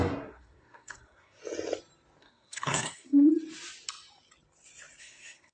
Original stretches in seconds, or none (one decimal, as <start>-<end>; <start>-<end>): 1.4-2.2; 3.3-5.0